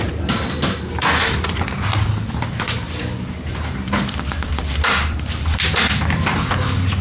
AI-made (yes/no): yes